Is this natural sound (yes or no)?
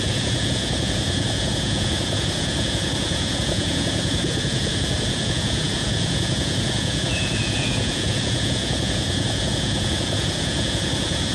no